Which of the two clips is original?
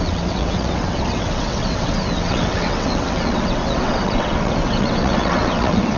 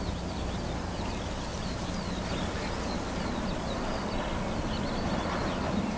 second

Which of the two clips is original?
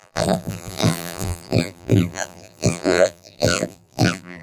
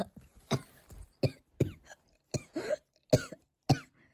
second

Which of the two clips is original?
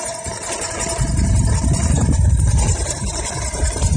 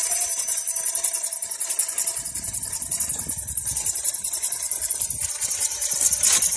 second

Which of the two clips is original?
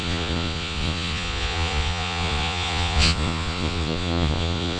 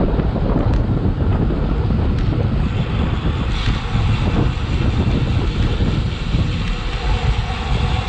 second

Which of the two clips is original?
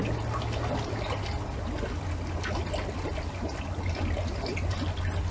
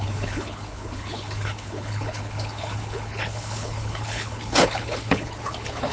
first